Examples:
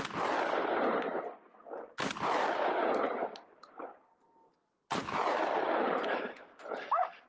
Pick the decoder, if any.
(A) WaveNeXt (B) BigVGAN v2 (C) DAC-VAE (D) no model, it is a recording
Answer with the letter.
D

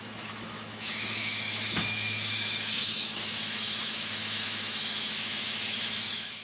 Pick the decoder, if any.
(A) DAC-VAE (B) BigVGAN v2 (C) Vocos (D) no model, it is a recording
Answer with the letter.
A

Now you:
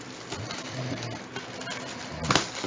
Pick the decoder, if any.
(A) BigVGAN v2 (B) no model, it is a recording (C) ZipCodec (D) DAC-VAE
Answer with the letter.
B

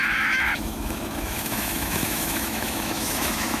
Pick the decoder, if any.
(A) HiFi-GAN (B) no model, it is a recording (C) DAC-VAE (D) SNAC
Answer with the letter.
C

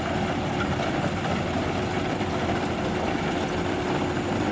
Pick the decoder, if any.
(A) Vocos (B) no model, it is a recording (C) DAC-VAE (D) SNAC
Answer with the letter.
B